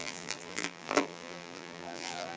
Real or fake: fake